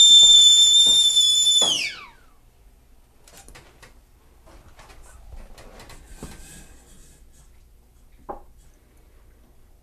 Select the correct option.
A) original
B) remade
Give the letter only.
A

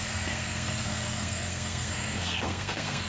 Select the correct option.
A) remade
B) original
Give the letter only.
A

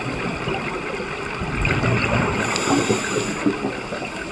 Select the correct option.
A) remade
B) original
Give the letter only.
B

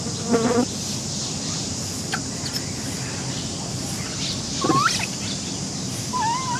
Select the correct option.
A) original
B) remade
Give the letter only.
A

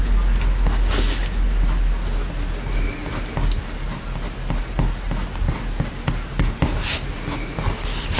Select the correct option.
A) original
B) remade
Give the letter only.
A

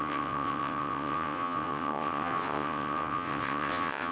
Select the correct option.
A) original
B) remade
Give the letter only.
B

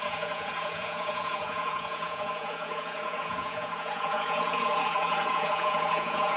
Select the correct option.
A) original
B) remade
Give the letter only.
B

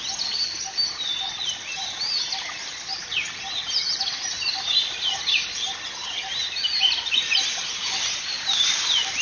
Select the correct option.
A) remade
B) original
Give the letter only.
B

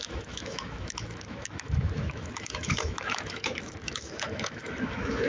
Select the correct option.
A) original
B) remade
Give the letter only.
B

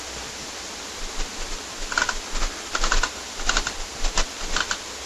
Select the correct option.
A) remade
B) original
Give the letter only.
B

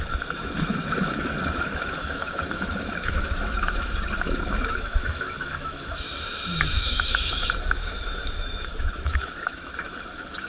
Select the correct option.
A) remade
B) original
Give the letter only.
A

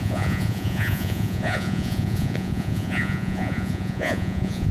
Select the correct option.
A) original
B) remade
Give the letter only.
B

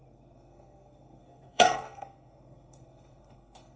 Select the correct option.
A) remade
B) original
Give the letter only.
A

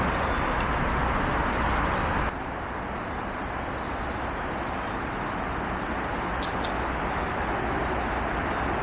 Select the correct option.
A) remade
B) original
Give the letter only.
B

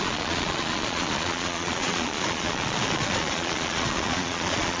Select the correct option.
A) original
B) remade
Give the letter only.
B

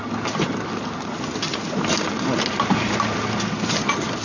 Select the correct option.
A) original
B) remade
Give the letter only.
A